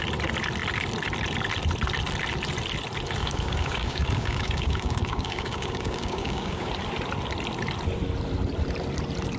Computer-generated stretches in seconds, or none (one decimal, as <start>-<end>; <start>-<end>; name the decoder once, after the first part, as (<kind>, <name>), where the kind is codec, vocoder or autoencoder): 3.2-6.7 (codec, DAC)